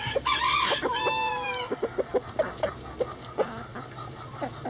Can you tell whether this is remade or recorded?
recorded